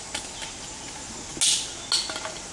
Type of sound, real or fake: real